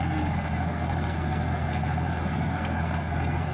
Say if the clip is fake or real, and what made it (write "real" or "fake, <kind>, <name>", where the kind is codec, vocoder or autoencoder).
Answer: fake, codec, SNAC